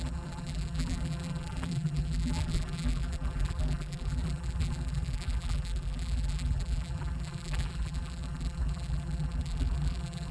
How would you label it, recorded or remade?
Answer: remade